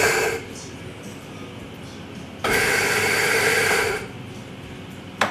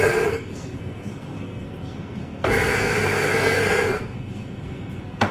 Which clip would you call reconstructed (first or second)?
second